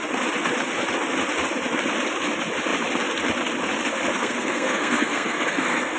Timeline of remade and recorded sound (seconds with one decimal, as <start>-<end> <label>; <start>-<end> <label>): 0.0-4.1 recorded; 4.1-6.0 remade